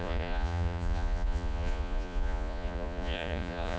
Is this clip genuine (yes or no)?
no